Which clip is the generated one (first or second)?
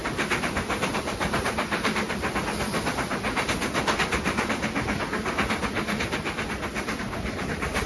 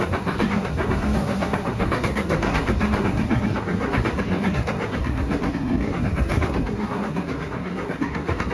second